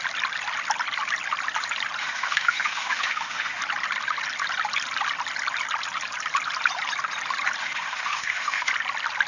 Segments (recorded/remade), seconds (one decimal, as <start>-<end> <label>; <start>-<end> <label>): 0.0-2.0 recorded; 2.0-3.6 remade; 3.6-7.6 recorded; 7.6-8.7 remade; 8.7-9.3 recorded